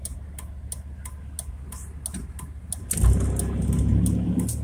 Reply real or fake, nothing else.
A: real